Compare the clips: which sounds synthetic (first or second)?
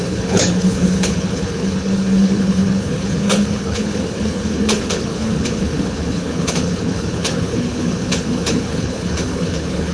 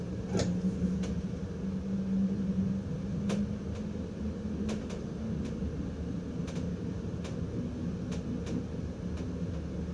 first